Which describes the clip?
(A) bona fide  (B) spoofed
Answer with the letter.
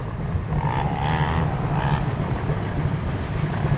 A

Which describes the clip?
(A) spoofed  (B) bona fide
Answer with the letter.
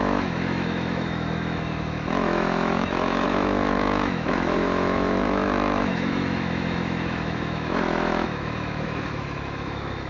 A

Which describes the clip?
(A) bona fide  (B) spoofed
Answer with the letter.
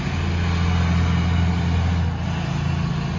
A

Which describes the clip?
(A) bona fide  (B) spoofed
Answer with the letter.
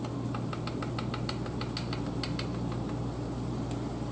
A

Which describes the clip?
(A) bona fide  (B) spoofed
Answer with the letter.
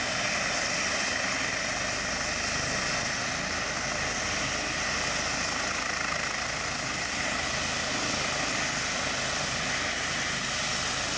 A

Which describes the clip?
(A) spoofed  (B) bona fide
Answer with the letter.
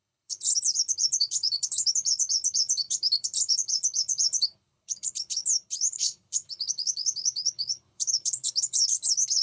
A